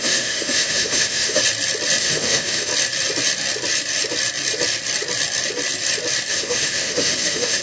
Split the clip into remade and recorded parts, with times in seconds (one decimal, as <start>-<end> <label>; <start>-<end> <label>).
0.0-1.4 remade; 1.4-2.0 recorded; 2.0-2.7 remade; 2.7-6.3 recorded; 6.3-7.6 remade